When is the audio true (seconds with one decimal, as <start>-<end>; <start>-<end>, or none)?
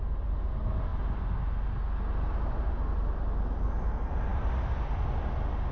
0.0-5.7